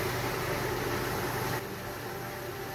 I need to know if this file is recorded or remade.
recorded